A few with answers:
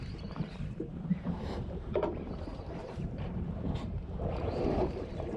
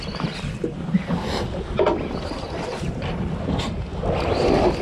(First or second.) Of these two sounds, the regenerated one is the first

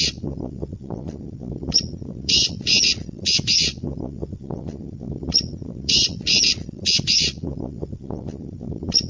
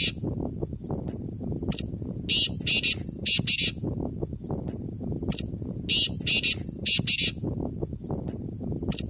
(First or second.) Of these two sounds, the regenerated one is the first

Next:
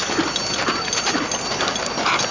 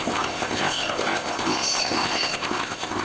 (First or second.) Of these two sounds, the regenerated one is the second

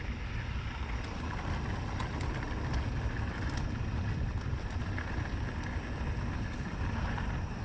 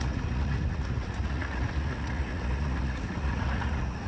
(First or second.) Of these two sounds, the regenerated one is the second